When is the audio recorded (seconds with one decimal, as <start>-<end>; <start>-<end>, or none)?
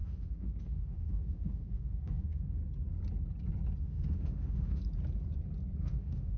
2.6-3.8; 4.8-5.8